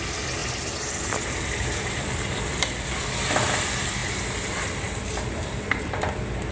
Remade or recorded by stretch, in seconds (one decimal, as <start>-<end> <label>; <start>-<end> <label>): 0.0-0.4 recorded; 0.4-3.5 remade; 3.5-6.5 recorded